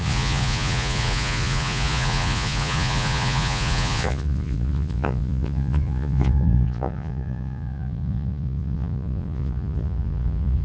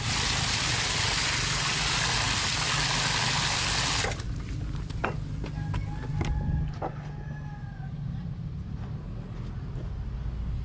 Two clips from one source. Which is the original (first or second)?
second